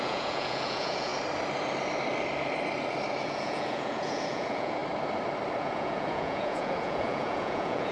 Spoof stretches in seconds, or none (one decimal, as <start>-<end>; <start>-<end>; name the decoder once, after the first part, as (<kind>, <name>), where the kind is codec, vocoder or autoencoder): 0.0-1.1 (vocoder, Vocos); 3.2-4.8; 5.6-7.9